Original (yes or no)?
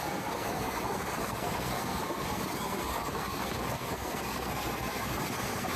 no